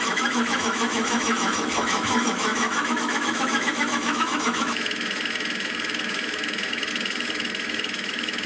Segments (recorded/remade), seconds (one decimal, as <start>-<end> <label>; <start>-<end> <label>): 0.0-8.5 remade